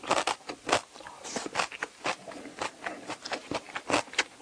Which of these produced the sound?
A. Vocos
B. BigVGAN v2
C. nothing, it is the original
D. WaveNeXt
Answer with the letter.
C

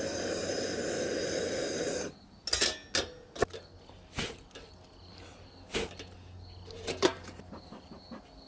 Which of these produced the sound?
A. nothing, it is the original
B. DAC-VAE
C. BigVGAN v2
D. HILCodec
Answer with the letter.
A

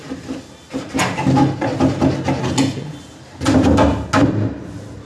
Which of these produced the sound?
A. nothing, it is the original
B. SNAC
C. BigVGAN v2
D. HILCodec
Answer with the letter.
A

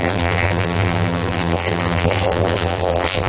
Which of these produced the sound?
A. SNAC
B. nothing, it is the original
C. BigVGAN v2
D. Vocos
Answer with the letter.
C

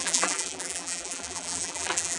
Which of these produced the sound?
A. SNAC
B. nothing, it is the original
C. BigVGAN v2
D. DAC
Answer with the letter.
C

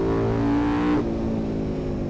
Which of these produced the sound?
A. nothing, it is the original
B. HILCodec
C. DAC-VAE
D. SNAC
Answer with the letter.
A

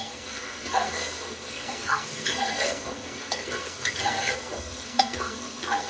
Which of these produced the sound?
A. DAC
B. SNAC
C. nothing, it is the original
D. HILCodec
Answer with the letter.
B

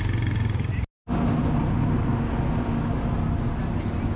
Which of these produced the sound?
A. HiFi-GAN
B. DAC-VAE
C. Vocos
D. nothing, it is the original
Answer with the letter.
D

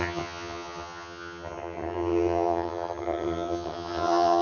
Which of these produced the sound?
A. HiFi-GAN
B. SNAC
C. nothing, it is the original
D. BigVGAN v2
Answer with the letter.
A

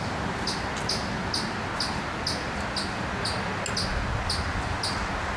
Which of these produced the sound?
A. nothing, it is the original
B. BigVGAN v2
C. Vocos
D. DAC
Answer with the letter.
A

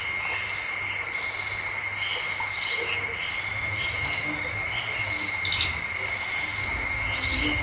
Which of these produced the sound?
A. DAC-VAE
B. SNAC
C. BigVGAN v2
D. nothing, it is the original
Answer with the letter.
D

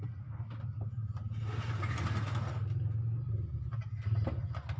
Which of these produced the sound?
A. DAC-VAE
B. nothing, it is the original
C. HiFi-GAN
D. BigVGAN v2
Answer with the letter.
B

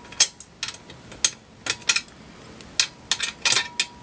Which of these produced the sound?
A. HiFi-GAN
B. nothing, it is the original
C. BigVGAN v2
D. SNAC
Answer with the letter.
B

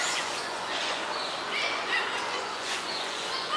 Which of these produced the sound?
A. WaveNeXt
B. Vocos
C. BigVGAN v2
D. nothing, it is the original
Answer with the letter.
B